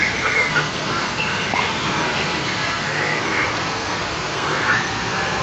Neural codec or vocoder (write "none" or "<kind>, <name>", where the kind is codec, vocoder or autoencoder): codec, SNAC